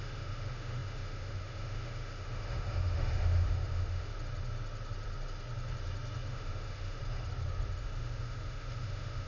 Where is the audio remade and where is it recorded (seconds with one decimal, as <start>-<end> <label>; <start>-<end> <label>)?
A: 0.0-4.1 remade; 4.1-6.3 recorded; 6.3-7.0 remade; 7.0-7.8 recorded; 7.8-9.3 remade